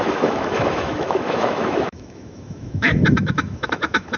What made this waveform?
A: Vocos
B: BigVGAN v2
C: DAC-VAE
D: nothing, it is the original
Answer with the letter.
C